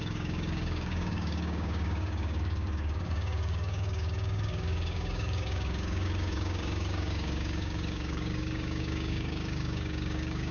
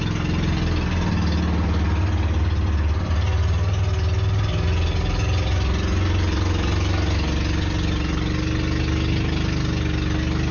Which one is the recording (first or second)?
second